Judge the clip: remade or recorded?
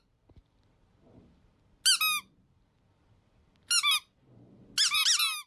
recorded